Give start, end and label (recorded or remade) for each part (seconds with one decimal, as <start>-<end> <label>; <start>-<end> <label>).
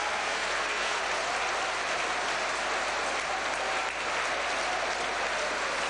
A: 0.0-1.0 remade; 1.0-5.9 recorded